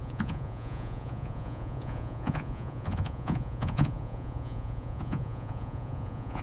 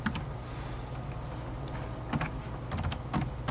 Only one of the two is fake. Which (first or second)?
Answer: first